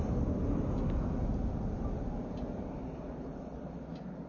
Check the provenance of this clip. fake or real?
real